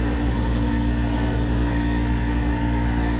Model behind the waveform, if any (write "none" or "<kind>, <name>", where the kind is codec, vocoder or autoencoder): codec, SNAC